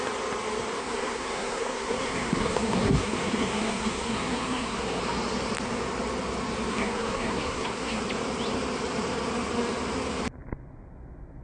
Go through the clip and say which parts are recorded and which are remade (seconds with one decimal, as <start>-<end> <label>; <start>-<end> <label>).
0.0-0.8 recorded; 0.8-5.0 remade; 5.0-6.7 recorded; 6.7-8.0 remade; 8.0-11.4 recorded